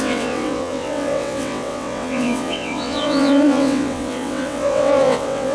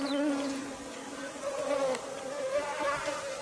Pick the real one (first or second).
second